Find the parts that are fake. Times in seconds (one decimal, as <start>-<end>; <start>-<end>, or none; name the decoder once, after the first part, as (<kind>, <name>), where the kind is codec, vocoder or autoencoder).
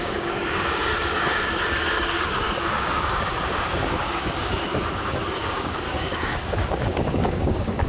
0.0-7.9 (codec, DAC)